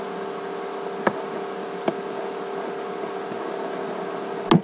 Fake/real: real